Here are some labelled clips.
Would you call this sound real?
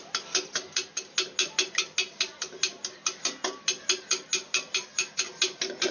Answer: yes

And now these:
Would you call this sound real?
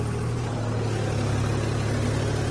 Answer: yes